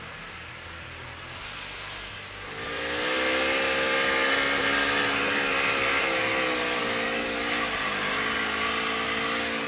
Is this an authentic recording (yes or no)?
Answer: yes